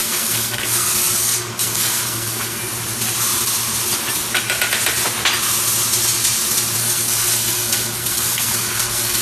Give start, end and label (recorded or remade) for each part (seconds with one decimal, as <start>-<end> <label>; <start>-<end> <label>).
0.0-2.6 remade; 2.6-6.8 recorded; 6.8-9.2 remade